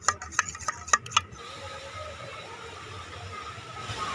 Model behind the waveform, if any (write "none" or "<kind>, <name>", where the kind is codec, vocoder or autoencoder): none